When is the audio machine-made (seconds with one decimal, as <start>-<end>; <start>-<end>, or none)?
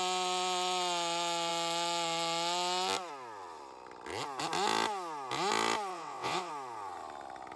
5.9-6.5